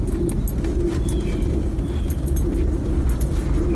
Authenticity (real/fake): real